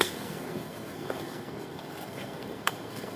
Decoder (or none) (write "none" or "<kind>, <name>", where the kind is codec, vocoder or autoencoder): codec, SNAC